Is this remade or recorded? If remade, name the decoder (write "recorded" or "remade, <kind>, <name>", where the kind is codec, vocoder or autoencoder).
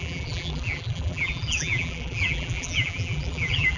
remade, vocoder, BigVGAN v2